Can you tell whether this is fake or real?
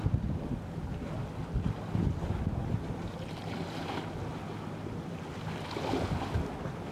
real